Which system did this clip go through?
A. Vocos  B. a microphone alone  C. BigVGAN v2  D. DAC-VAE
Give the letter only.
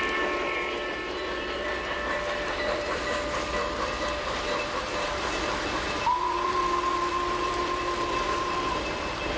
C